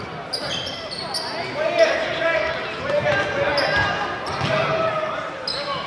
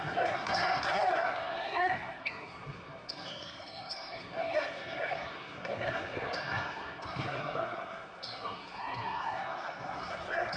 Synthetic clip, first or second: second